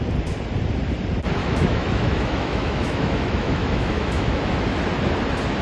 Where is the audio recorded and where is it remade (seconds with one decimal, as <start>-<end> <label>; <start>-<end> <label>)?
0.0-1.4 recorded; 1.4-4.8 remade; 4.8-5.6 recorded